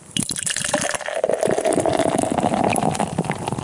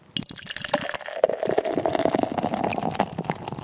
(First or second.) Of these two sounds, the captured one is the second